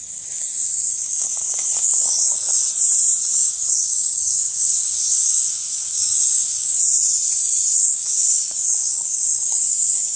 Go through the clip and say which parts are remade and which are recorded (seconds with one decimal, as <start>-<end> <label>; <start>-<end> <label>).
0.0-2.5 remade; 2.5-3.5 recorded; 3.5-6.8 remade; 6.8-7.7 recorded; 7.7-10.2 remade